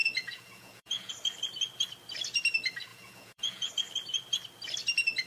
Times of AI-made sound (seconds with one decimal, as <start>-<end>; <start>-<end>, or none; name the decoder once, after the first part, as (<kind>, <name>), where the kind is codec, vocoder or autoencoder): 0.0-1.1 (vocoder, Vocos); 2.9-3.7